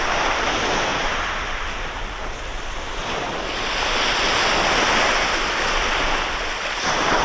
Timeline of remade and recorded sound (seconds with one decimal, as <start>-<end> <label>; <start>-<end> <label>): 0.0-7.2 recorded